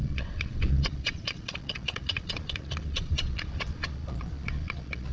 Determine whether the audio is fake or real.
fake